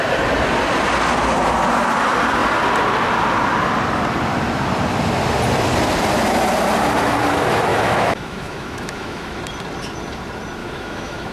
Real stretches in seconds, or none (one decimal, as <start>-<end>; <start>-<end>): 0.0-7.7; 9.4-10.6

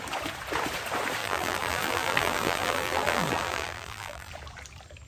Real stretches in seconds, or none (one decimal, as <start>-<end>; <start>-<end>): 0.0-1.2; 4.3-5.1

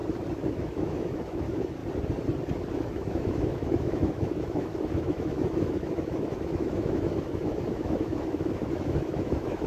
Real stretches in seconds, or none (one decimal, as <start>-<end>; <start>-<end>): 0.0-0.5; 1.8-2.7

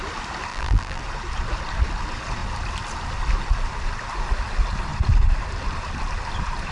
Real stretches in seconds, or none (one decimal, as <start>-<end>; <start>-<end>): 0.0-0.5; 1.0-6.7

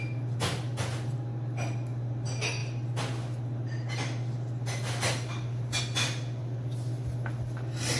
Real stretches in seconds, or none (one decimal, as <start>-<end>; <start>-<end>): 0.0-8.0

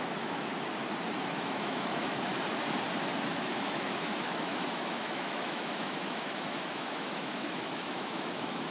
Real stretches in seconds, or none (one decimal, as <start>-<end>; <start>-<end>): 0.5-1.3; 2.3-3.3

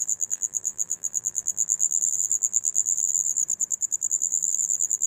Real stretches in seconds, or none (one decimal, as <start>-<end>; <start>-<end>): 3.4-4.1

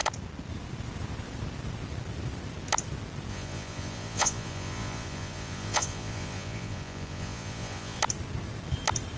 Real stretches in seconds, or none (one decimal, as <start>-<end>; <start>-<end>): 0.0-3.3; 8.0-9.2